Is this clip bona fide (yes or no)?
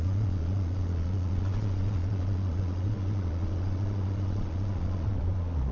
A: no